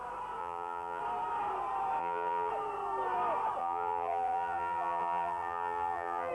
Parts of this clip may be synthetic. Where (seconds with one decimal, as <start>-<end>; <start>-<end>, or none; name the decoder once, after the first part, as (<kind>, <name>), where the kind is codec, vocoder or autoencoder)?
0.4-1.0 (vocoder, BigVGAN v2); 2.0-2.5; 3.6-6.3